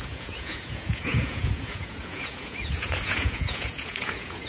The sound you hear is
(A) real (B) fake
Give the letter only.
B